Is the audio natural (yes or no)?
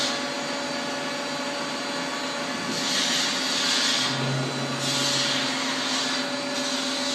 yes